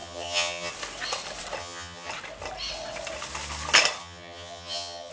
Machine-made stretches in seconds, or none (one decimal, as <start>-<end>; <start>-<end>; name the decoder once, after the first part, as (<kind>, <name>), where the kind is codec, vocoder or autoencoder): 0.0-0.7 (vocoder, HiFi-GAN); 1.6-2.1; 4.0-5.1